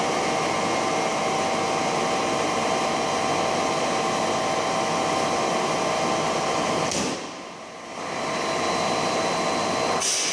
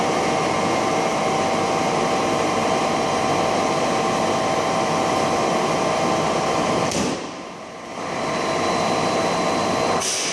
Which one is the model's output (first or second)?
second